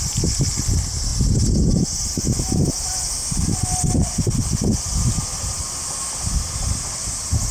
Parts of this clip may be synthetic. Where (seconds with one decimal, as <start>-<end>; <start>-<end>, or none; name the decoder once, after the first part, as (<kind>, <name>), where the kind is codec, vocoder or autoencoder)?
none